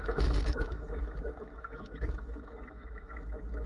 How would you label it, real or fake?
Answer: fake